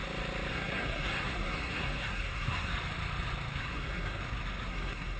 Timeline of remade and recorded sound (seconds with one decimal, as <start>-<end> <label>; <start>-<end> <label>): 0.0-0.5 recorded; 0.5-2.7 remade; 2.7-3.6 recorded; 3.6-4.2 remade; 4.2-4.7 recorded; 4.7-5.2 remade